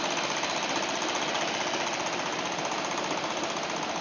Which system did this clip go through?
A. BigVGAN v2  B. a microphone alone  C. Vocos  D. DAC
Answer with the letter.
B